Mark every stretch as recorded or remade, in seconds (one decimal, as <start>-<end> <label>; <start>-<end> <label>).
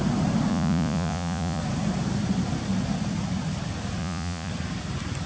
0.0-0.5 recorded; 0.5-1.6 remade; 1.6-4.0 recorded; 4.0-4.5 remade; 4.5-5.3 recorded